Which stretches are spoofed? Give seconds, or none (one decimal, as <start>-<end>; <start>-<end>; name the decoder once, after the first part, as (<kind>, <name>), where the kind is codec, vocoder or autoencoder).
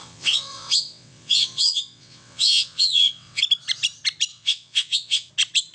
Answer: 0.0-3.4 (vocoder, WaveNeXt); 4.3-5.3